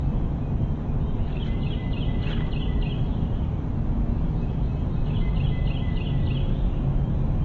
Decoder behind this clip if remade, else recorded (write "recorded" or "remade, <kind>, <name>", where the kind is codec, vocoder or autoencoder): recorded